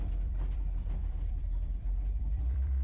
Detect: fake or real fake